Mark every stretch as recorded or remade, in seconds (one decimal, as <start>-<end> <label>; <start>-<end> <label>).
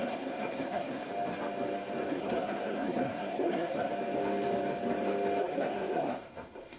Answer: 0.0-1.1 remade; 1.1-2.1 recorded; 2.1-3.9 remade; 3.9-5.4 recorded; 5.4-6.8 remade